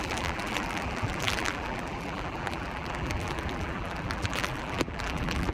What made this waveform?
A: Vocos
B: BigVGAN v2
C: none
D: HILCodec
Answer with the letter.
B